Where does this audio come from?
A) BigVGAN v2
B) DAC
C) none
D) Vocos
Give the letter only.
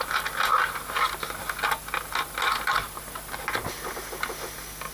C